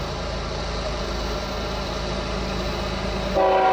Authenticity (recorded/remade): recorded